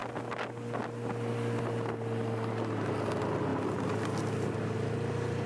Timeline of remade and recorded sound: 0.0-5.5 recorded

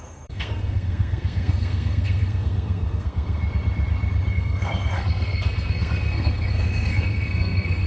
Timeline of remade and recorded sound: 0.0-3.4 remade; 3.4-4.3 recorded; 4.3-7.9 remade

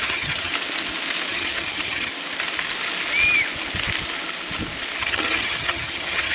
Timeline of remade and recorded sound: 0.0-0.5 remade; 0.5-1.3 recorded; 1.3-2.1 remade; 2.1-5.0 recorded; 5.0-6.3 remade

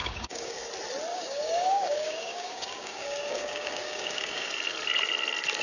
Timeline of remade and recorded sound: 0.0-0.7 remade; 0.7-1.1 recorded; 1.1-4.5 remade; 4.5-5.6 recorded